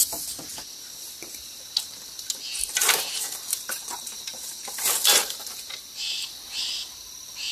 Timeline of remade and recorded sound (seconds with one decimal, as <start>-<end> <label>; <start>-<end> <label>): 0.0-2.8 recorded; 2.8-7.5 remade